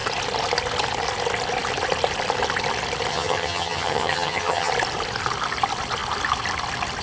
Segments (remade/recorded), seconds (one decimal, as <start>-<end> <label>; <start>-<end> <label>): 0.0-3.1 recorded; 3.1-4.7 remade; 4.7-7.0 recorded